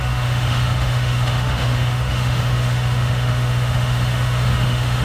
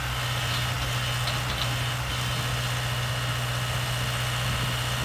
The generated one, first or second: first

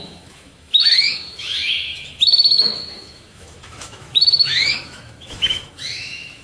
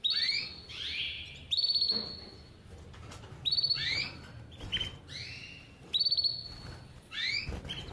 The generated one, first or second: first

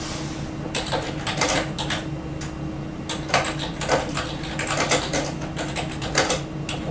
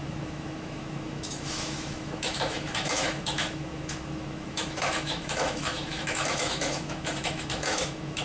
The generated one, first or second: second